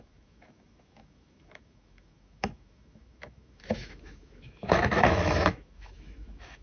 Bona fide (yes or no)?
no